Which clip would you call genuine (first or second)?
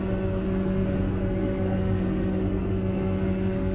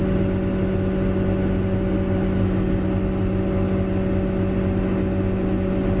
second